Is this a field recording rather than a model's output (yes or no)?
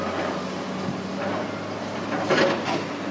yes